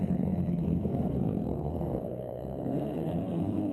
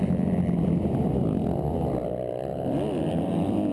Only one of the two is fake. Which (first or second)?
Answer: first